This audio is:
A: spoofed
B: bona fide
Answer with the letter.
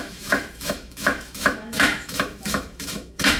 A